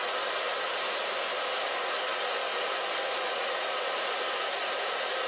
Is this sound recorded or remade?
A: recorded